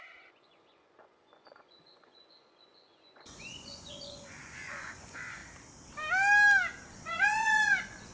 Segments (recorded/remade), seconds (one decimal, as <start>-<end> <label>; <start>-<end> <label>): 0.0-5.4 remade; 5.4-6.9 recorded; 6.9-8.1 remade